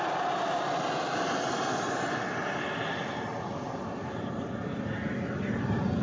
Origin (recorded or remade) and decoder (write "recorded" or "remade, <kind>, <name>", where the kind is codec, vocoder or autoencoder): recorded